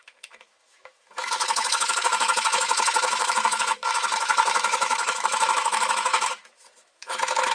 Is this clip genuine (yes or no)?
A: no